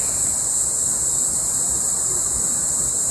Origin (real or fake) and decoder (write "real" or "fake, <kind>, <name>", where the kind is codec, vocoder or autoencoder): real